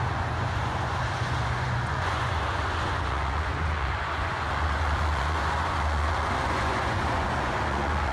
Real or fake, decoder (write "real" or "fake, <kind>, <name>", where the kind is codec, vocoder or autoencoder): fake, vocoder, Vocos